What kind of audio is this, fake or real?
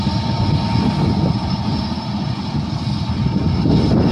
real